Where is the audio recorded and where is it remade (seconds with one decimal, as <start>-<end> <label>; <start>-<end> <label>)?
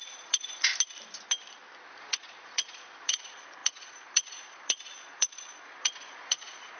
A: 0.0-0.7 remade; 0.7-2.0 recorded; 2.0-6.8 remade